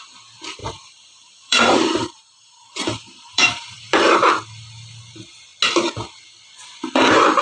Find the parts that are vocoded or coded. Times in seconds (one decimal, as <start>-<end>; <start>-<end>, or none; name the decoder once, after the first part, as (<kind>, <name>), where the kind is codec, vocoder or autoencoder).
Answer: 0.6-4.3 (vocoder, BigVGAN v2)